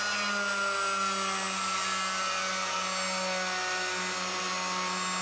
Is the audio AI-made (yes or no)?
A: no